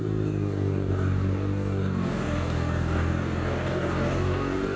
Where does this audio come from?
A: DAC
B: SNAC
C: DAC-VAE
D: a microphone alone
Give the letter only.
A